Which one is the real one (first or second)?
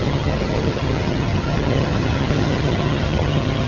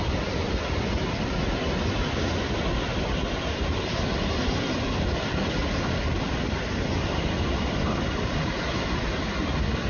second